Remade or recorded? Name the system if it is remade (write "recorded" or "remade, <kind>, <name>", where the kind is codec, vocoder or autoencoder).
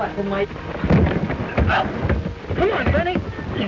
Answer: recorded